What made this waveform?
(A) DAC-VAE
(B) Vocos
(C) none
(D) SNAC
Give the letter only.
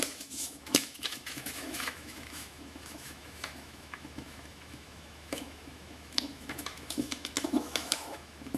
A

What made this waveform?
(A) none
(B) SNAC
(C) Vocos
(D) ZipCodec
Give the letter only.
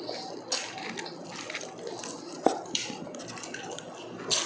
A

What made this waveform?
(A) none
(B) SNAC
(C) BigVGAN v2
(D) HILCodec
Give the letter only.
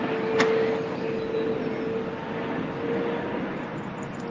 A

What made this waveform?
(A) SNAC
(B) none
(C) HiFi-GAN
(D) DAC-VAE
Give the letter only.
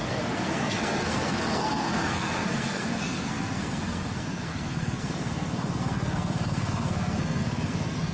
A